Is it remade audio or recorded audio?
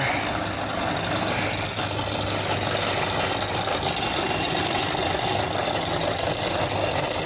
recorded